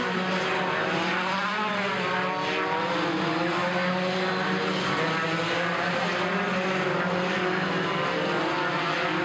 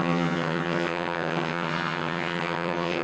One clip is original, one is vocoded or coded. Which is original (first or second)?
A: first